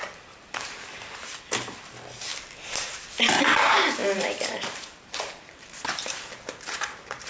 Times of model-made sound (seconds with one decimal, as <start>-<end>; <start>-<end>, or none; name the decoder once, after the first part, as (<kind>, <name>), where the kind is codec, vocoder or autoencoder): 0.0-2.3 (vocoder, BigVGAN v2); 3.3-7.3